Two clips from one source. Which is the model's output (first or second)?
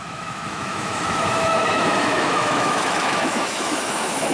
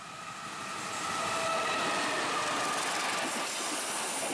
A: first